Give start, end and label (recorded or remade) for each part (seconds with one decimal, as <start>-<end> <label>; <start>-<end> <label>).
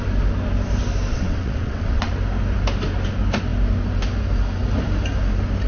0.0-1.1 recorded; 1.1-2.1 remade; 2.1-5.7 recorded